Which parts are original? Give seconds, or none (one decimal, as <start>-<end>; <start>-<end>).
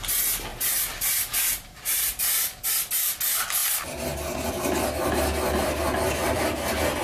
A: 0.0-0.5; 2.7-7.0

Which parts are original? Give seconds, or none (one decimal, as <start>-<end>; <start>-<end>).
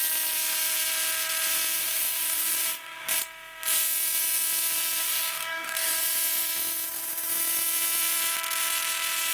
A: 0.0-1.8; 3.2-5.0; 6.0-9.3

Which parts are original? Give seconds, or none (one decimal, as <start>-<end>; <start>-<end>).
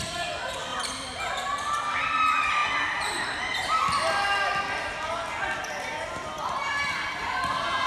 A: 0.0-7.9